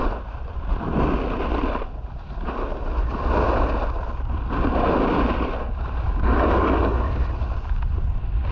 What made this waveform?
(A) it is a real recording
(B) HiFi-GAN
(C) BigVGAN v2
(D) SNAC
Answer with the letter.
A